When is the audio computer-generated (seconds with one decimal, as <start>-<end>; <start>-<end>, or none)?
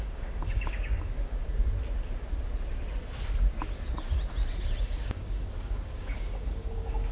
0.0-1.4; 4.8-7.1